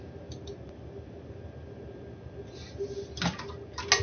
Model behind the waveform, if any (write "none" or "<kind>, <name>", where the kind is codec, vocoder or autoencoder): none